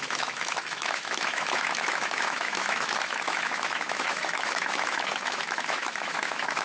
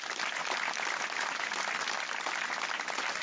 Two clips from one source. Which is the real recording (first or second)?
second